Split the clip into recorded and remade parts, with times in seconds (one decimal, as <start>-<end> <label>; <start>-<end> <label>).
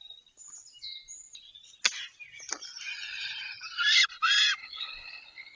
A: 0.0-4.6 recorded; 4.6-5.6 remade